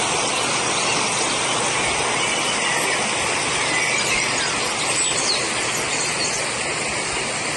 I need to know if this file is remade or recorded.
recorded